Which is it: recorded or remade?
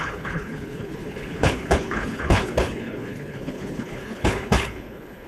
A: remade